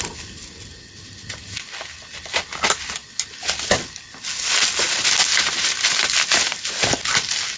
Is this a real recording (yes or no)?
yes